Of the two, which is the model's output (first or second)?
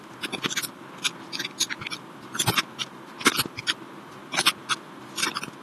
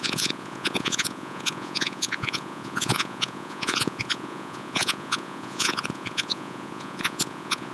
second